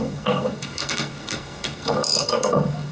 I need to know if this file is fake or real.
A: fake